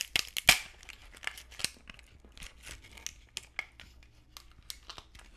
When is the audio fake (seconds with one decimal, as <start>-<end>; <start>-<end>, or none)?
none